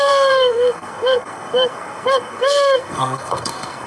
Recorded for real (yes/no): no